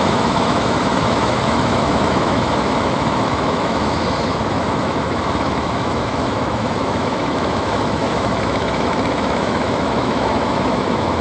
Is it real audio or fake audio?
fake